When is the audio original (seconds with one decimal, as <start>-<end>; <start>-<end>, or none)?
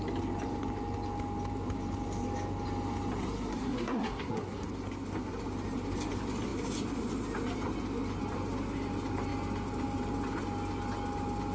0.0-3.5; 4.7-11.5